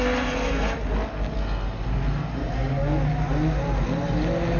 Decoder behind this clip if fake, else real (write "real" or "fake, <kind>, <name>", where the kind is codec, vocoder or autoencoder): real